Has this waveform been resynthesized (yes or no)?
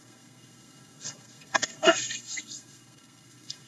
yes